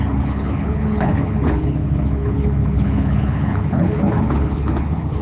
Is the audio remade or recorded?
remade